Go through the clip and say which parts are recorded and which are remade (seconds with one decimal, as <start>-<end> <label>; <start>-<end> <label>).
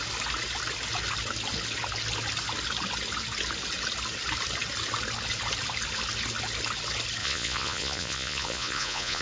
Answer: 0.0-7.2 recorded; 7.2-9.2 remade